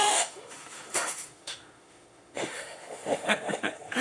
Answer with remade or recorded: remade